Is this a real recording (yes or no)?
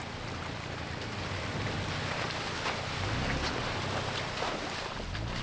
yes